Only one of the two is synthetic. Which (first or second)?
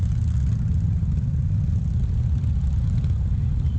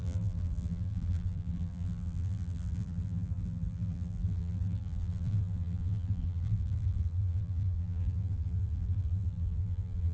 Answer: second